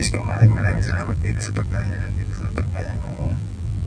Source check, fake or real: fake